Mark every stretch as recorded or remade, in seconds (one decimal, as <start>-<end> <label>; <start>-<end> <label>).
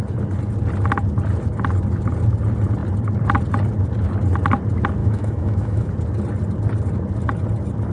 0.0-5.0 recorded; 5.0-5.9 remade; 5.9-7.9 recorded